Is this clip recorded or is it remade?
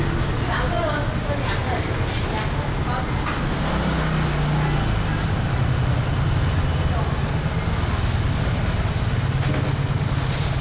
recorded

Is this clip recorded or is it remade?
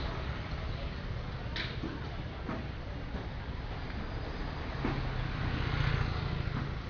recorded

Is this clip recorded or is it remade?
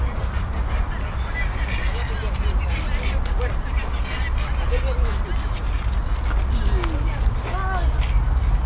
recorded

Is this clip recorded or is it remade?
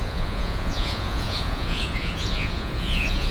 remade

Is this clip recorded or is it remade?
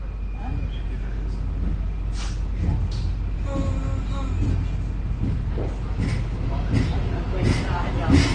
recorded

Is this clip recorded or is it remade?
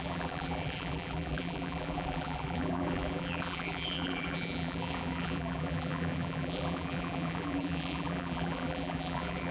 remade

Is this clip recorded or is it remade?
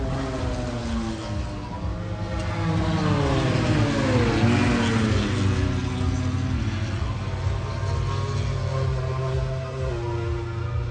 recorded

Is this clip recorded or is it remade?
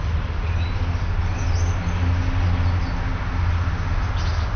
recorded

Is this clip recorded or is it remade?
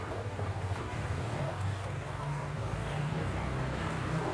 remade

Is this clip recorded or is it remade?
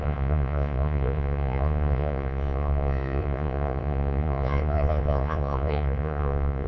remade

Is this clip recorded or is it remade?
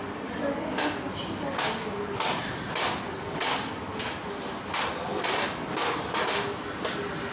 recorded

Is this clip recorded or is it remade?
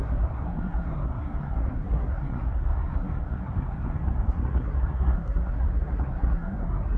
remade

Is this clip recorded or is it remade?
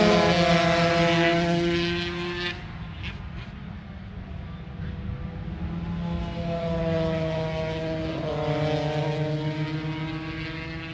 recorded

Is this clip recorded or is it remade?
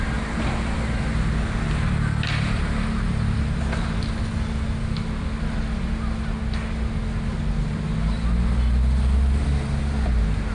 recorded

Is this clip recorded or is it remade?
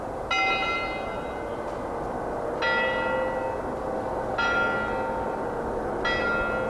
recorded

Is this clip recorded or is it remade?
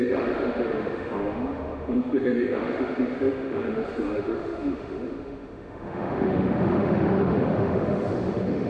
remade